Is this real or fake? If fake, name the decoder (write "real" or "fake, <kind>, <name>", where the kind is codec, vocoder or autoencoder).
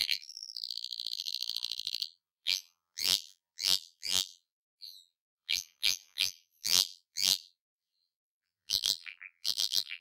fake, vocoder, BigVGAN v2